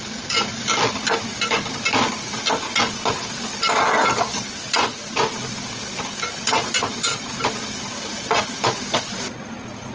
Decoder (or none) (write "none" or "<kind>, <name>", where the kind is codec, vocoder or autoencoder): none